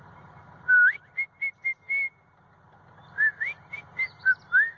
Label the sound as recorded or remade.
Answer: recorded